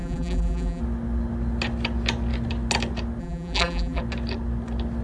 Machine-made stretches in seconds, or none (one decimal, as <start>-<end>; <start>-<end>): 0.0-0.8; 3.2-4.0